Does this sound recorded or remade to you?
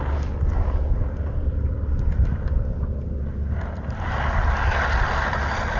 recorded